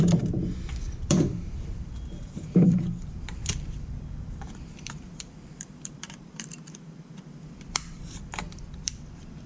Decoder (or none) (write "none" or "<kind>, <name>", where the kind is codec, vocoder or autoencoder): vocoder, BigVGAN v2